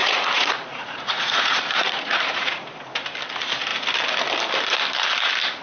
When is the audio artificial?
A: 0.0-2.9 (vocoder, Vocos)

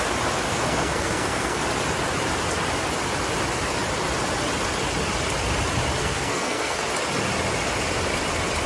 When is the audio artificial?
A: 0.5-1.6 (codec, SNAC); 6.0-6.9

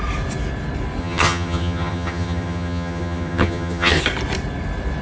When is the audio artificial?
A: 1.0-4.0 (vocoder, HiFi-GAN)